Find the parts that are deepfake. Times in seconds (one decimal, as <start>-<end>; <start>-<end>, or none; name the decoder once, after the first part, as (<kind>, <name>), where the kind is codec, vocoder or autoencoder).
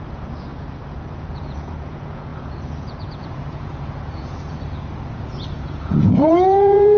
0.0-7.0 (vocoder, Vocos)